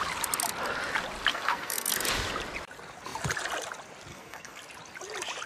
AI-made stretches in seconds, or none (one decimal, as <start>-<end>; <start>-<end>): 1.3-1.9; 4.1-4.6